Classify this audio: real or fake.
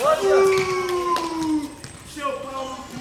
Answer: real